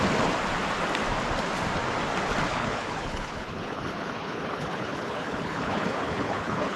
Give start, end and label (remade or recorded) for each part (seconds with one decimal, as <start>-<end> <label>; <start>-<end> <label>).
0.0-2.5 recorded; 2.5-6.8 remade